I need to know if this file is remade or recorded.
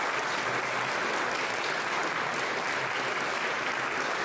recorded